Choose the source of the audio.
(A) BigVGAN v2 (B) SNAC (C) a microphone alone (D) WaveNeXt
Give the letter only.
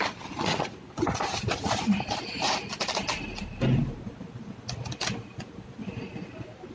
C